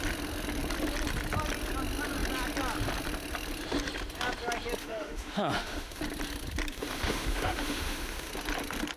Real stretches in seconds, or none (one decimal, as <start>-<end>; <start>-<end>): 0.0-4.8; 6.0-6.7; 8.3-9.0